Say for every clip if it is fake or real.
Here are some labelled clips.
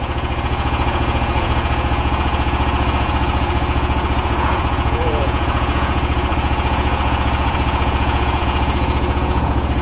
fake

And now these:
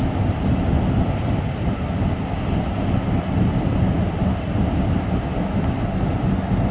real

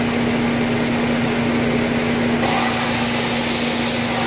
real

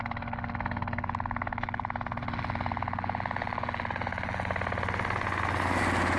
real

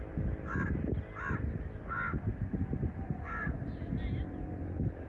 real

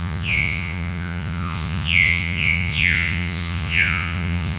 fake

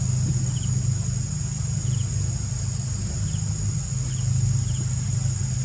real